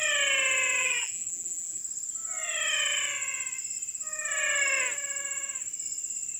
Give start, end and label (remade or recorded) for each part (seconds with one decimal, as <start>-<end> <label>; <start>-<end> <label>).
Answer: 0.0-0.8 recorded; 0.8-1.8 remade; 1.8-6.4 recorded